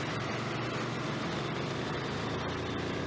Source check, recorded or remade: recorded